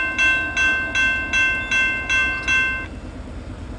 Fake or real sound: real